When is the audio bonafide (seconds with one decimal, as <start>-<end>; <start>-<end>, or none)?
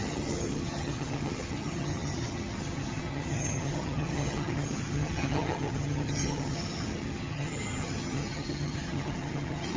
none